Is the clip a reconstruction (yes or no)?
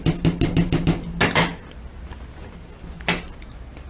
no